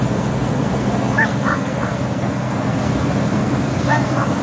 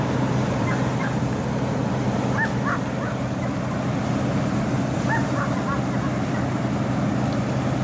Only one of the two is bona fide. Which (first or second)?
second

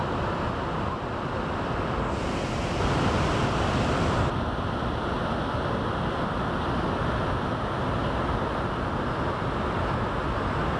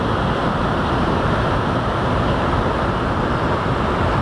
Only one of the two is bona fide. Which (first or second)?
first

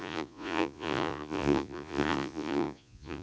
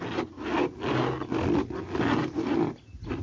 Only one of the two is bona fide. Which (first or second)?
second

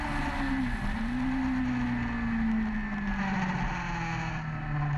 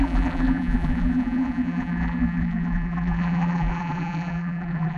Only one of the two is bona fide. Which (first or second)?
first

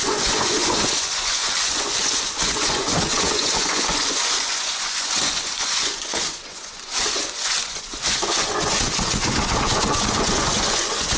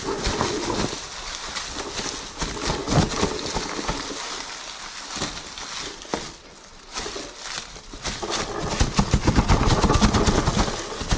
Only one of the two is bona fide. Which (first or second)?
second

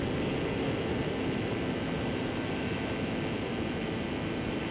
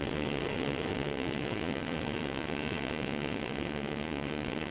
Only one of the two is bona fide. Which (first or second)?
first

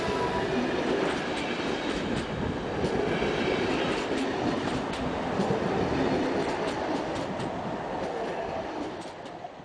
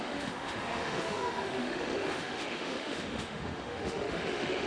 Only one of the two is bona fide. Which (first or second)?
first